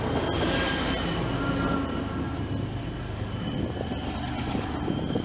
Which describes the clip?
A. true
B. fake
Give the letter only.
A